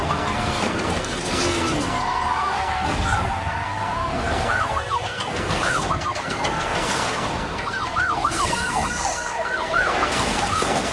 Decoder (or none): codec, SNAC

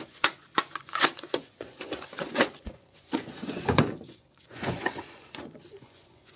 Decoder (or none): vocoder, Vocos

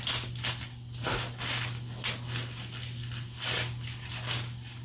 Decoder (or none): none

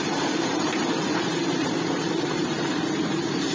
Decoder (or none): vocoder, BigVGAN v2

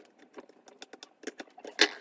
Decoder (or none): none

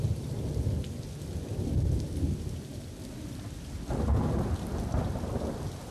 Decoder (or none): none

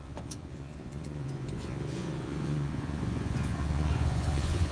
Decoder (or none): vocoder, Vocos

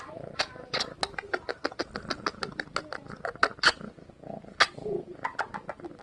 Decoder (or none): none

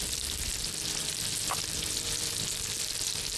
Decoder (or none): none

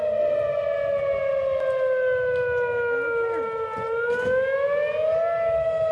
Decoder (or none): none